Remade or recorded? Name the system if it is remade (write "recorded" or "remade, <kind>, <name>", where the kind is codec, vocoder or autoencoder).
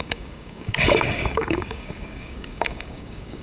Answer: remade, codec, DAC